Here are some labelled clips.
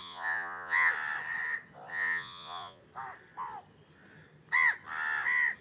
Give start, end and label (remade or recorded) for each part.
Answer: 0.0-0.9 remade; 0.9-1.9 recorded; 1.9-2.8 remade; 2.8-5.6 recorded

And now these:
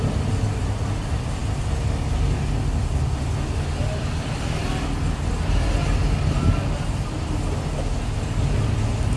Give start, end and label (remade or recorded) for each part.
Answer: 0.0-9.2 recorded

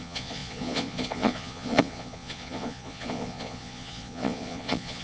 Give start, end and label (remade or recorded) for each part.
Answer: 0.0-5.0 remade

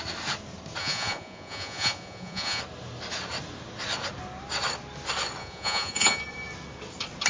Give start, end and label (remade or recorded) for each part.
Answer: 0.0-0.8 recorded; 0.8-2.6 remade; 2.6-5.4 recorded; 5.4-6.2 remade; 6.2-7.3 recorded

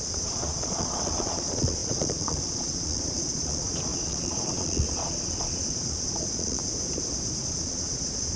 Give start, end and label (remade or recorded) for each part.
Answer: 0.0-6.6 remade; 6.6-7.4 recorded; 7.4-8.4 remade

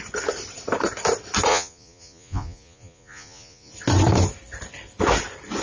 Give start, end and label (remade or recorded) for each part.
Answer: 0.0-1.5 recorded; 1.5-3.7 remade; 3.7-5.6 recorded

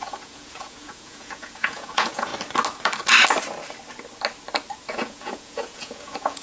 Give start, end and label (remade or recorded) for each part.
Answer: 0.0-2.3 remade; 2.3-4.9 recorded; 4.9-6.4 remade

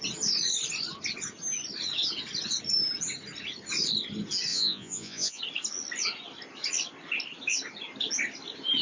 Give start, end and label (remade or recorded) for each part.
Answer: 0.0-4.5 recorded; 4.5-5.4 remade; 5.4-8.8 recorded